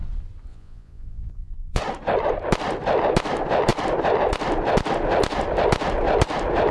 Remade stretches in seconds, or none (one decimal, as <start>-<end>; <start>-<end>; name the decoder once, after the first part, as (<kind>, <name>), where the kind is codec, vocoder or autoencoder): 0.5-1.8 (vocoder, Vocos)